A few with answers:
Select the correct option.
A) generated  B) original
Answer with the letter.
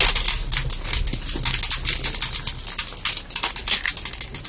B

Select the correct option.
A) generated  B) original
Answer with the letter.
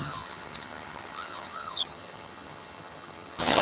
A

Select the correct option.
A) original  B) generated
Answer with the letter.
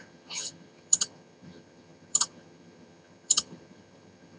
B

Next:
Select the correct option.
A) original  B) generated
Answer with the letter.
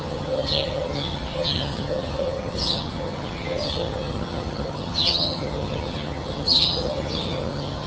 B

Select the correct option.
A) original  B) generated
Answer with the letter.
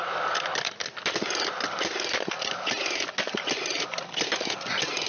A